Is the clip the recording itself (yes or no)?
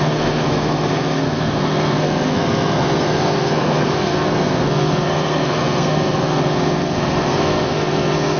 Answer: no